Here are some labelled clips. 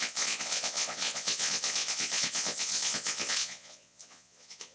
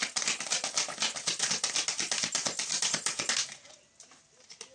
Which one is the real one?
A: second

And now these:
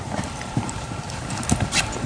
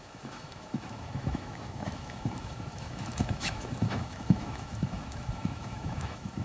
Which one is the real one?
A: first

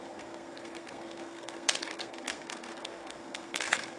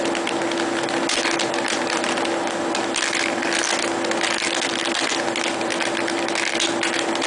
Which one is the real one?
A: second